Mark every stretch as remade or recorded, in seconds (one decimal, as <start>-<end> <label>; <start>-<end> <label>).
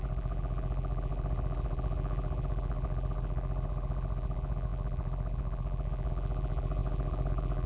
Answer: 0.0-7.7 remade